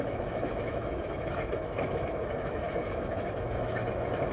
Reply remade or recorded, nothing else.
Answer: remade